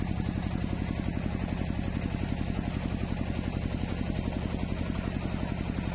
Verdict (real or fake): real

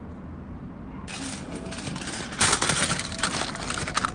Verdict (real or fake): real